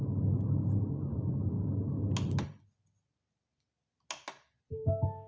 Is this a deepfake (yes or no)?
no